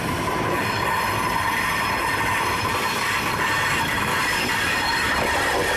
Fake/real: fake